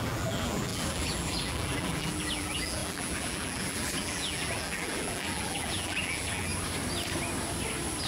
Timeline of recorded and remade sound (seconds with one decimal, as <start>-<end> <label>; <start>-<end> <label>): 0.0-6.5 remade; 6.5-8.1 recorded